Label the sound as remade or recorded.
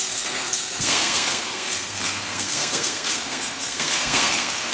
remade